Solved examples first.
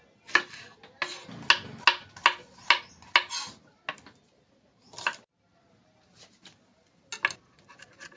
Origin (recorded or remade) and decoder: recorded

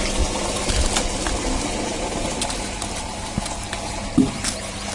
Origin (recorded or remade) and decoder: recorded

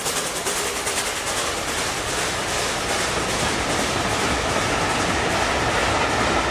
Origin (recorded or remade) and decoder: recorded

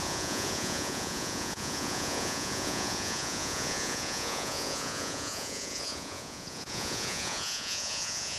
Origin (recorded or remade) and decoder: remade, vocoder, Vocos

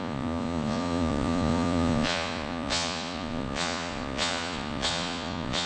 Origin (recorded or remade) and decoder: remade, vocoder, Vocos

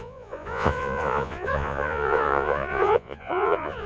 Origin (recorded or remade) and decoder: remade, vocoder, Vocos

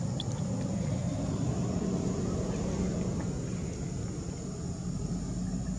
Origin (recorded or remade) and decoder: recorded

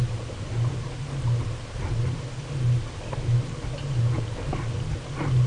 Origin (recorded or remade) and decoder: recorded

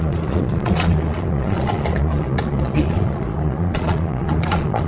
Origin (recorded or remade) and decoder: remade, vocoder, Vocos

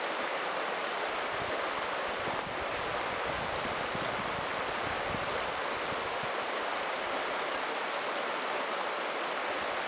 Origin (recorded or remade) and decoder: recorded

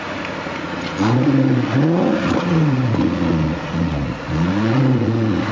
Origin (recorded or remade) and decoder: remade, vocoder, Vocos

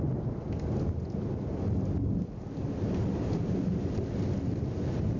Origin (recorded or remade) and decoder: recorded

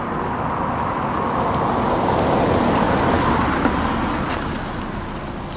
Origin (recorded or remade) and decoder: recorded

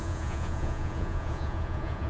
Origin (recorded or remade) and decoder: remade, vocoder, Vocos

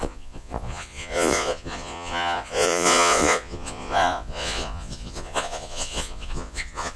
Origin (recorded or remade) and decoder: remade, vocoder, Vocos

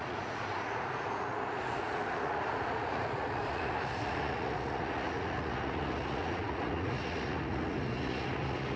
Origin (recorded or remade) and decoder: remade, vocoder, Vocos